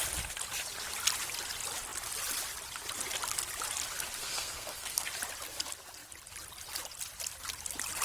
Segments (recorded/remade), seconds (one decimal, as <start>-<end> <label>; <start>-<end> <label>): 0.0-4.2 recorded; 4.2-5.1 remade; 5.1-8.0 recorded